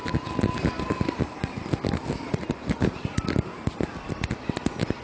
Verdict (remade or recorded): recorded